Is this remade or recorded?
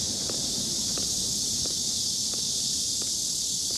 recorded